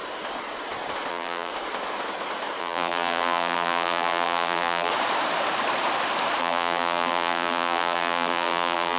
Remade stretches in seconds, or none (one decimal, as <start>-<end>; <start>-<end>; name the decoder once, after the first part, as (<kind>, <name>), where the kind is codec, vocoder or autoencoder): 1.1-1.5 (vocoder, BigVGAN v2); 2.6-4.9; 6.4-9.0